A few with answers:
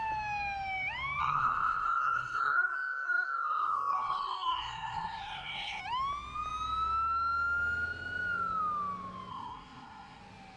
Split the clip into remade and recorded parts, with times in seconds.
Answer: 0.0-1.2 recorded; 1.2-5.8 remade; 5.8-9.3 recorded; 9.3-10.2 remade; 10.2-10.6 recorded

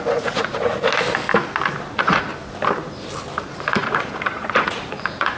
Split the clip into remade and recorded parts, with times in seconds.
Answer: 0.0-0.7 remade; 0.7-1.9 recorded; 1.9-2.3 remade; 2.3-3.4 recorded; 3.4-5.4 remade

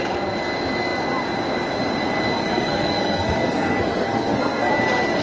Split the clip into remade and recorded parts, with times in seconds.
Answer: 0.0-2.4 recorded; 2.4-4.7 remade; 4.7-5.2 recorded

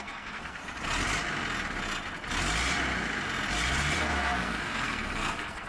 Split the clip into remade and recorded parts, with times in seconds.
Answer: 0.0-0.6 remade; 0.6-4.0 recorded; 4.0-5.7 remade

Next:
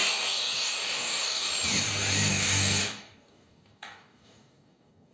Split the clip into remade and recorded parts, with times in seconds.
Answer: 0.0-1.5 remade; 1.5-2.3 recorded; 2.3-5.1 remade

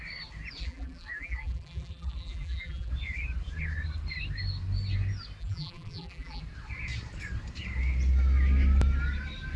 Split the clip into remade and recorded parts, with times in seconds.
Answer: 0.0-0.6 recorded; 0.6-2.9 remade; 2.9-5.4 recorded; 5.4-6.4 remade; 6.4-9.6 recorded